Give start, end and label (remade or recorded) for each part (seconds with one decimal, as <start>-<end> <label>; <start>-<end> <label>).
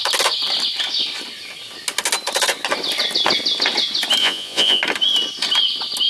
0.0-4.2 recorded; 4.2-4.8 remade; 4.8-6.1 recorded